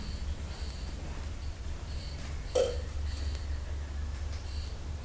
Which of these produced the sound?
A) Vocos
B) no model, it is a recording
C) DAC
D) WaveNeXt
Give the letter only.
B